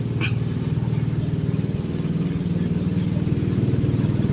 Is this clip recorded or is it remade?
recorded